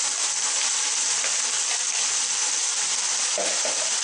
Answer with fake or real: real